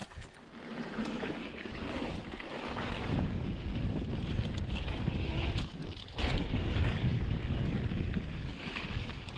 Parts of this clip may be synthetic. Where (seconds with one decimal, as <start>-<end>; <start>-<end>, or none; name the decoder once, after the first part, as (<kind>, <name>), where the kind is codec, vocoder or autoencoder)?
1.0-3.7 (codec, DAC); 4.7-9.4